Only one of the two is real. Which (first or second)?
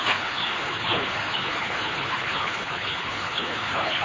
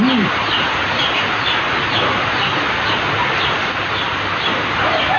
second